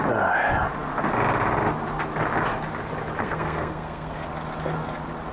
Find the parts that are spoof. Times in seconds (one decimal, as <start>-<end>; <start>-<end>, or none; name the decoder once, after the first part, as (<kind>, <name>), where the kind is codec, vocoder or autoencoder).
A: 3.2-4.3 (codec, SNAC)